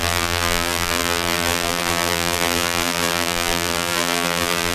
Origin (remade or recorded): remade